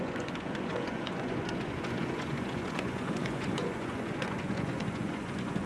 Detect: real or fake fake